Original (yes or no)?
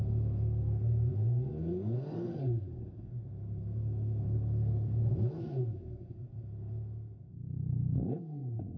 no